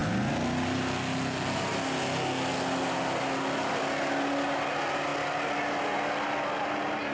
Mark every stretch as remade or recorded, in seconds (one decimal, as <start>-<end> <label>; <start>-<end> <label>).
0.0-7.1 recorded